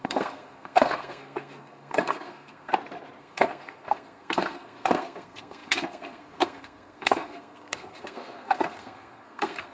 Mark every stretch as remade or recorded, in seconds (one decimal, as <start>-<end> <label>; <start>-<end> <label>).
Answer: 0.0-2.7 remade; 2.7-3.2 recorded; 3.2-9.7 remade